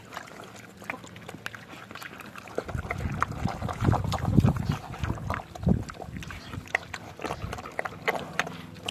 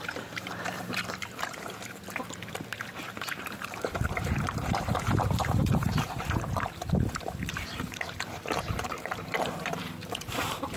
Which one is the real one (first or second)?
first